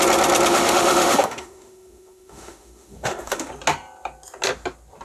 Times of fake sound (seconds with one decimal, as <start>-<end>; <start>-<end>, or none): 0.5-3.5